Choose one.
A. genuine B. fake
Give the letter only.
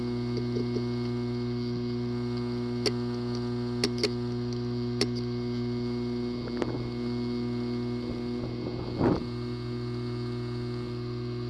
A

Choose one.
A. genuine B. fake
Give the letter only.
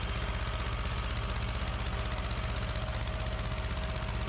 A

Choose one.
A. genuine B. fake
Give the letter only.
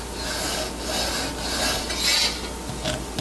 A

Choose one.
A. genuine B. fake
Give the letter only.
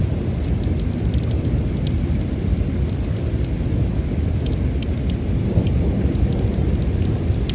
A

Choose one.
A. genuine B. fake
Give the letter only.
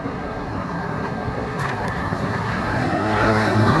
B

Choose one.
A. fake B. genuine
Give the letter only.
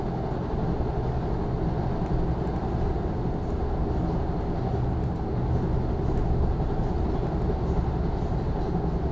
B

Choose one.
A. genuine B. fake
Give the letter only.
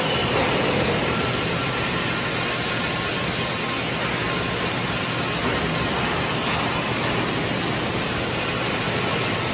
A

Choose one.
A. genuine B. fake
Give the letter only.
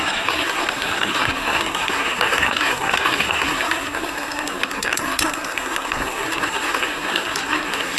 B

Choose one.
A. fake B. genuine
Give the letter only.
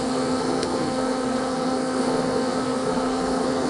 A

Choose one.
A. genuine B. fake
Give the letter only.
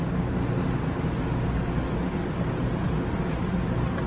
A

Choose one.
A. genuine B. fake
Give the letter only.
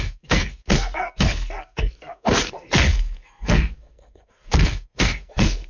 B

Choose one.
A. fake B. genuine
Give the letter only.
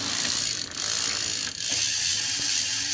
B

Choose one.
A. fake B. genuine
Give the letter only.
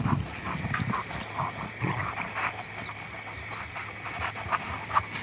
B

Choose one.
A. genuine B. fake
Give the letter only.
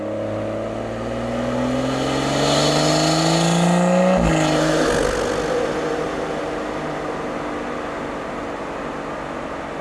A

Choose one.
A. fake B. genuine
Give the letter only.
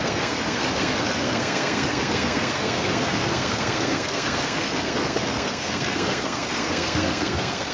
A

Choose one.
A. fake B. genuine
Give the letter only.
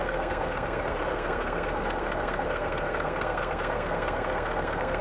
A